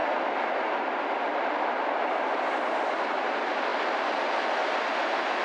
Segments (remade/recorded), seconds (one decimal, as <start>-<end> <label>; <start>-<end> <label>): 0.0-5.4 recorded